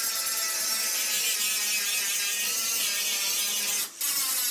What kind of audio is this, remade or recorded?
recorded